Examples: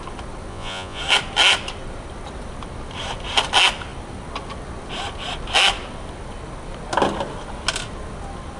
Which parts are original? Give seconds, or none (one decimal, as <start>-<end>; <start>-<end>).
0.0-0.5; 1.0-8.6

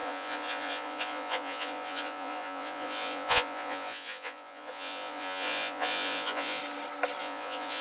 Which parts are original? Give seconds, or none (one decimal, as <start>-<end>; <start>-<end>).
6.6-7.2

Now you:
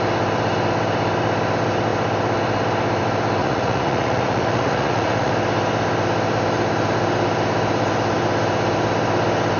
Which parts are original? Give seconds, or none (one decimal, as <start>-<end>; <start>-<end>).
0.0-3.4; 5.3-9.6

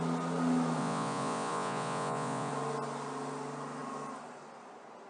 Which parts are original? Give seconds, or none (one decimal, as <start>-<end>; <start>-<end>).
0.0-0.8; 2.5-5.1